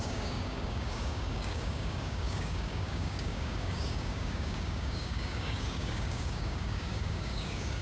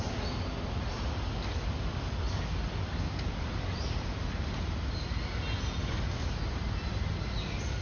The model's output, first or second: first